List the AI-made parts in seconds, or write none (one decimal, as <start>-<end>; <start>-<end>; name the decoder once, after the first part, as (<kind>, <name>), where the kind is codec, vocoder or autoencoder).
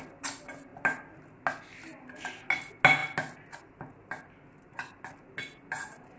none